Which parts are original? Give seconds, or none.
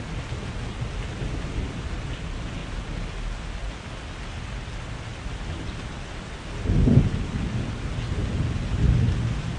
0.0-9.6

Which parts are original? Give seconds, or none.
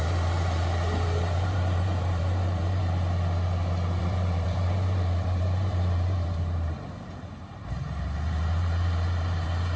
2.8-4.0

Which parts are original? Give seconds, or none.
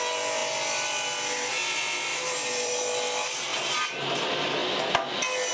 0.0-2.1; 2.8-3.5; 4.1-5.5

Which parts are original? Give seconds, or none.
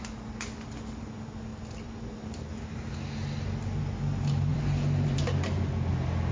0.0-1.5; 2.5-4.5; 5.2-6.3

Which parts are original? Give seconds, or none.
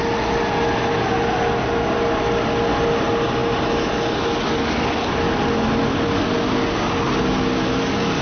0.0-8.2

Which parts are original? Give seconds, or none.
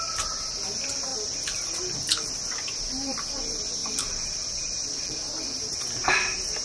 0.0-1.1; 1.6-3.8; 5.2-6.6